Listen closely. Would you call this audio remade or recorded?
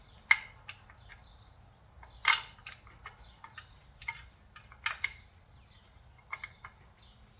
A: recorded